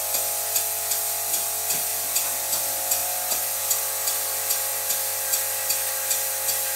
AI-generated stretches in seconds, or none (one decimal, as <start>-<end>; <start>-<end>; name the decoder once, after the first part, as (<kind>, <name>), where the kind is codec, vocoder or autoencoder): none